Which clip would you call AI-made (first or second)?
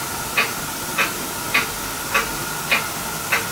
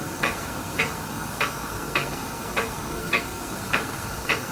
second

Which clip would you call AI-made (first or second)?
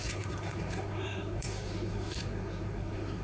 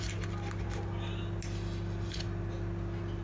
first